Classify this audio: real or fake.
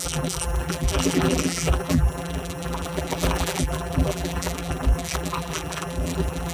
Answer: fake